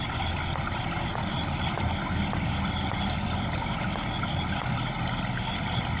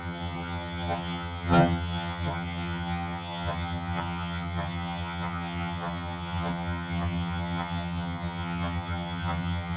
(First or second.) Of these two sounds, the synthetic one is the second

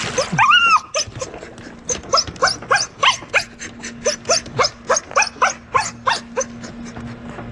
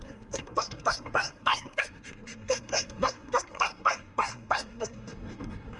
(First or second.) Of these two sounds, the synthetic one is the second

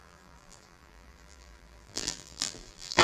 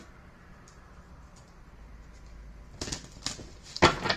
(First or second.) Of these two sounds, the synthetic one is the first